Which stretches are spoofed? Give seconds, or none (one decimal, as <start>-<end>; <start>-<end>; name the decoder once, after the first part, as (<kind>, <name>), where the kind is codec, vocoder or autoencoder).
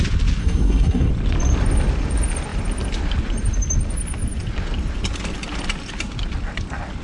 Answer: 0.4-1.1 (codec, SNAC)